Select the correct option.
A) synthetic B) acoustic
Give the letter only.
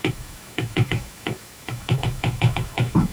A